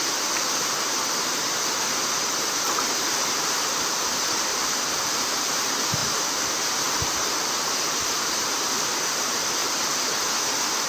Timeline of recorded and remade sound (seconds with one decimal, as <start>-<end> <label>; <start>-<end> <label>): 0.0-10.9 remade